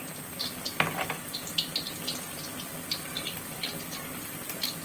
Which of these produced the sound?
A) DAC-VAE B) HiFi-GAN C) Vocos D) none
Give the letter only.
D